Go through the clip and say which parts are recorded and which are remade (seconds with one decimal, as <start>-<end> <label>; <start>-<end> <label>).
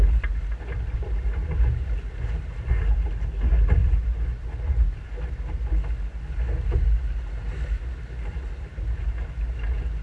0.0-10.0 recorded